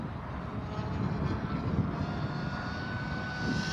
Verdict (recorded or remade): recorded